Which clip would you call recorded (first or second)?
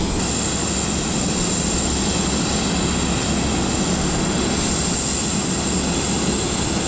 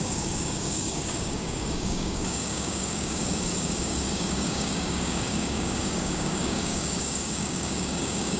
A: first